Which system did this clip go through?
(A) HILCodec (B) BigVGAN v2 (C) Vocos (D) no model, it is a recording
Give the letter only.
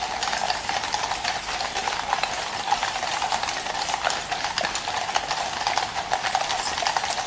B